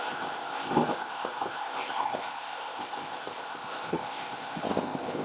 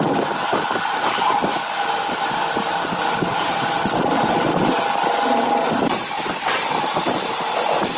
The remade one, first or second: first